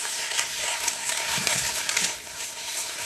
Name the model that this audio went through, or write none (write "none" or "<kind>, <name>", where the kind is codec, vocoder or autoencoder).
codec, SNAC